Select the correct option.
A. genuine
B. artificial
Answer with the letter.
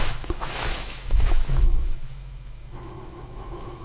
B